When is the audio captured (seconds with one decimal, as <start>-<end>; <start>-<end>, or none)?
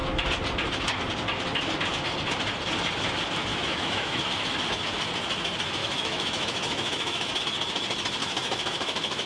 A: 0.0-3.5; 4.2-5.8; 7.4-8.2